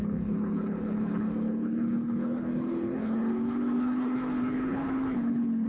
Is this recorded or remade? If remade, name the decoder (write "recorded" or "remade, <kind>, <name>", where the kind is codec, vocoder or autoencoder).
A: remade, codec, HILCodec